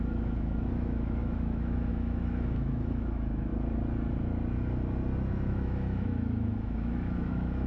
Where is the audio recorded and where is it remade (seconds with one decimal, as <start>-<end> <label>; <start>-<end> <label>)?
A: 0.0-3.5 remade; 3.5-5.5 recorded; 5.5-7.7 remade